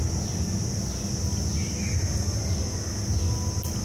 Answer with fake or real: real